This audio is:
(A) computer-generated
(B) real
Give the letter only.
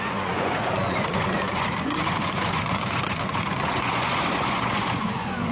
A